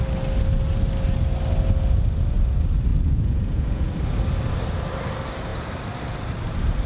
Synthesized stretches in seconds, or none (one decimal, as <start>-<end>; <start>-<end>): 2.9-3.9